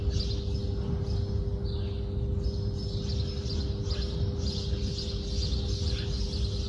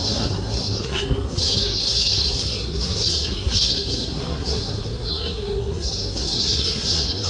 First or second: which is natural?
first